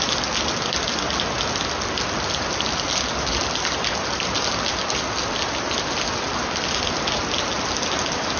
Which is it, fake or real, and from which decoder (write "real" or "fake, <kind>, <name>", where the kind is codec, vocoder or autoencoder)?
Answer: real